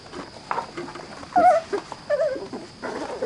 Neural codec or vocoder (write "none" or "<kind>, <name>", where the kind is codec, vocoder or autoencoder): none